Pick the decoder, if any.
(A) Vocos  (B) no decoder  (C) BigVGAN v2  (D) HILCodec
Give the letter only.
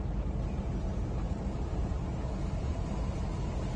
B